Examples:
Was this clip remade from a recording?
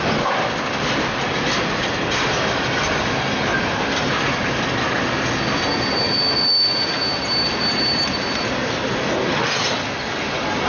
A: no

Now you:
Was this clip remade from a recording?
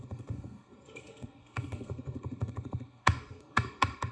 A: yes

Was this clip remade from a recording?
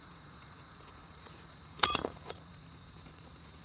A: yes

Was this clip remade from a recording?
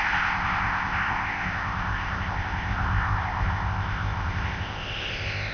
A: yes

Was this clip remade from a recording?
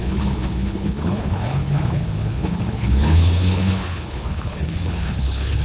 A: yes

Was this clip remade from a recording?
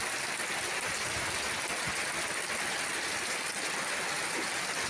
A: no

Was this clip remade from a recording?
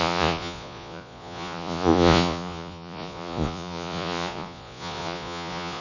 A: yes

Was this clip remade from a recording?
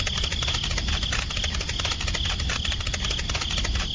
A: no